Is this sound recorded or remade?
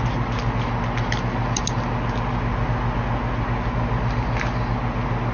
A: recorded